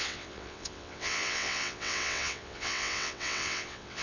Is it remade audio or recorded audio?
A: remade